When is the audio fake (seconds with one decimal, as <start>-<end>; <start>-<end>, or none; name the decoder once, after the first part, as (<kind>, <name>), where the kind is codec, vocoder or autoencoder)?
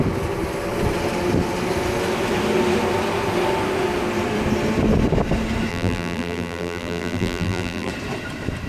5.7-7.9 (vocoder, BigVGAN v2)